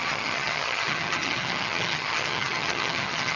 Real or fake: fake